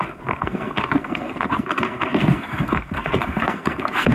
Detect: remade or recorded remade